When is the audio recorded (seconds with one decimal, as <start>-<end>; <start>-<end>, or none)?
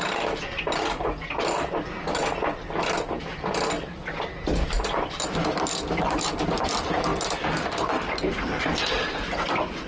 0.0-9.9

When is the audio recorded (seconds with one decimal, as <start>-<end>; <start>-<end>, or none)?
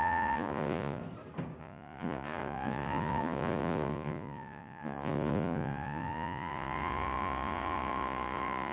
1.0-1.6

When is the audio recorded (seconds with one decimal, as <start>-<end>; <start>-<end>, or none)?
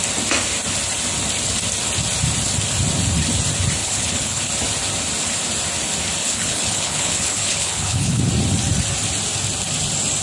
0.0-3.8; 4.5-6.2; 8.2-10.2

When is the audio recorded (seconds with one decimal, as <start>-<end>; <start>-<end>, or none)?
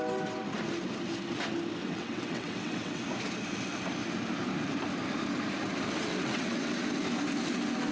0.0-1.8; 3.0-6.1; 6.7-7.9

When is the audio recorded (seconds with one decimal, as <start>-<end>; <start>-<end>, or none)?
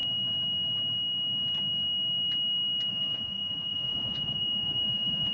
0.0-2.9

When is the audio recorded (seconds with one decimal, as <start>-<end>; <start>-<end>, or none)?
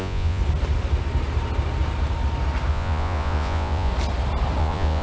0.4-2.7; 3.9-4.6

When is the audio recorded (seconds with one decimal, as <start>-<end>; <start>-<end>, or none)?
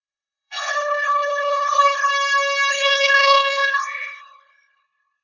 2.1-2.7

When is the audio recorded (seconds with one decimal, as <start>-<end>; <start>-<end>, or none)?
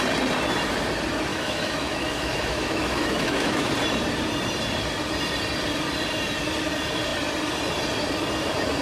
0.0-1.3; 3.7-8.8